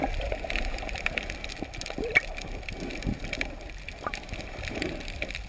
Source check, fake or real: fake